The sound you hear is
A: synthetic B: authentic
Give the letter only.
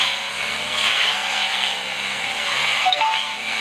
A